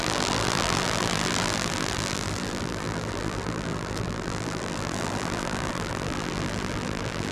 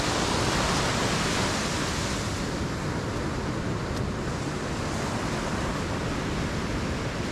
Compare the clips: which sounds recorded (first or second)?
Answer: second